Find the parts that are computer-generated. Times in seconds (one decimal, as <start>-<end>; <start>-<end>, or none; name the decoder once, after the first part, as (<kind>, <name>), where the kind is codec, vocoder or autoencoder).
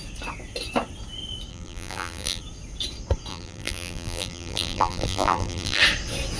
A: 1.5-2.4 (vocoder, BigVGAN v2); 3.3-5.8